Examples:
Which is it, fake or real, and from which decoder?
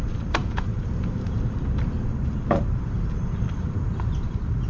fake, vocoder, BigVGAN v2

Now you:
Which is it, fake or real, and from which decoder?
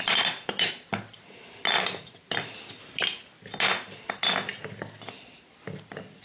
real